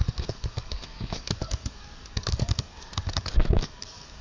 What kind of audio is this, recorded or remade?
remade